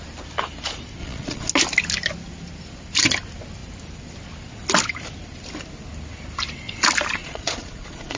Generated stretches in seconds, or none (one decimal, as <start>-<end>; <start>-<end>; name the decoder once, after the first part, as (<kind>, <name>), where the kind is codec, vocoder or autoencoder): 1.0-1.5 (vocoder, Vocos); 7.2-8.2